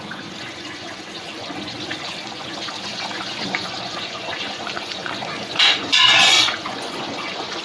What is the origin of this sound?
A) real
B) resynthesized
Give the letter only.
B